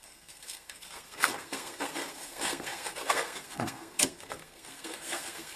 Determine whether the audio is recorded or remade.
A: remade